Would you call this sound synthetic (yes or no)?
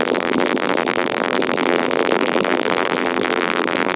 yes